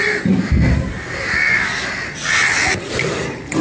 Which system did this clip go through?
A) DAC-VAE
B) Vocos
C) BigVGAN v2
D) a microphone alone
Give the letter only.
D